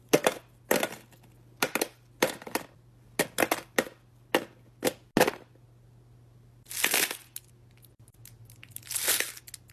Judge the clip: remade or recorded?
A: recorded